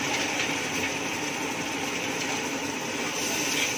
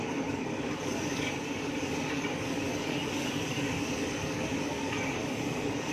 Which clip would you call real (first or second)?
first